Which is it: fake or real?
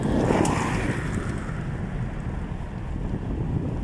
real